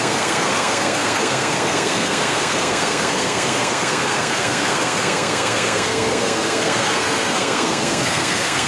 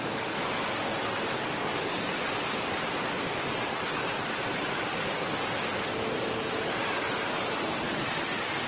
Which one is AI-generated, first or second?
first